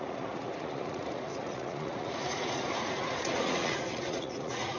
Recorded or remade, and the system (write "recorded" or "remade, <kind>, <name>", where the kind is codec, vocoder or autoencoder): remade, vocoder, Vocos